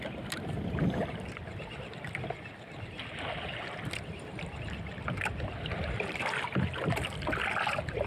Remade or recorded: recorded